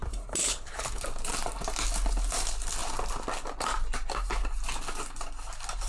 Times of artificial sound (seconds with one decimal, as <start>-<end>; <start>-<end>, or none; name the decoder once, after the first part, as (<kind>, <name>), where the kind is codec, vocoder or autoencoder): 0.4-1.0 (codec, HILCodec)